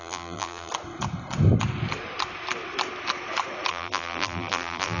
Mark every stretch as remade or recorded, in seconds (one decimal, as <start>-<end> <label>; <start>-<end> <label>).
0.0-0.7 remade; 0.7-3.7 recorded; 3.7-5.0 remade